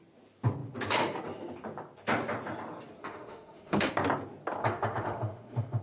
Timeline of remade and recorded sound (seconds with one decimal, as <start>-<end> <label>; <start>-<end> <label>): 0.0-3.0 recorded; 3.0-3.9 remade; 3.9-4.6 recorded; 4.6-5.8 remade